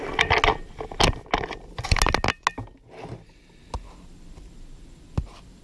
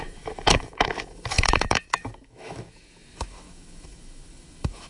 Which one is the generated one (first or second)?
second